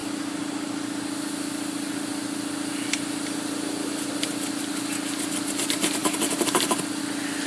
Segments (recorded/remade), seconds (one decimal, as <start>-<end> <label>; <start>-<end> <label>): 0.0-4.5 remade; 4.5-6.0 recorded; 6.0-7.0 remade; 7.0-7.5 recorded